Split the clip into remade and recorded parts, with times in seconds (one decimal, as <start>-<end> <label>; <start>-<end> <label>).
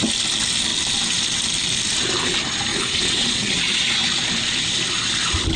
0.0-2.7 recorded; 2.7-4.0 remade; 4.0-5.6 recorded